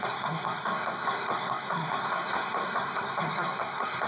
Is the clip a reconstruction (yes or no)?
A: yes